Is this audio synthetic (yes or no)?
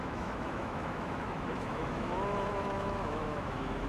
yes